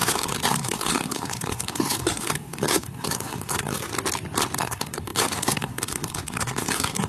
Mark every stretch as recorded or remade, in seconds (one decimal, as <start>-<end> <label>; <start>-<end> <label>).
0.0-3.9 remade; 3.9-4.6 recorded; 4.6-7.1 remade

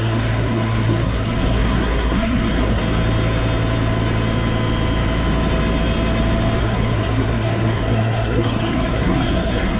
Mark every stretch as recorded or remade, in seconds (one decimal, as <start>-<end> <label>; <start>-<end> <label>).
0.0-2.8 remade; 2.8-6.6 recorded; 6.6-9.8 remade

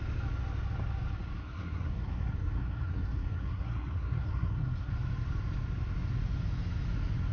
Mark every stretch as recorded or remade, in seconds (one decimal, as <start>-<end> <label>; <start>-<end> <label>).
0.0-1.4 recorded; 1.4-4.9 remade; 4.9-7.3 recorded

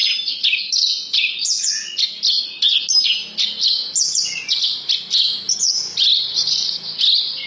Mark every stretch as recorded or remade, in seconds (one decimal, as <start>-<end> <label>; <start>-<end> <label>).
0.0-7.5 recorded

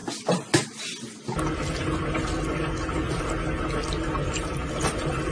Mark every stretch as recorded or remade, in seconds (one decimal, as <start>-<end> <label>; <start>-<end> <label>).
0.0-5.3 recorded